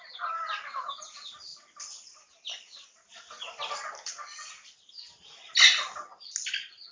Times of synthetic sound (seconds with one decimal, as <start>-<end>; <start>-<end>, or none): none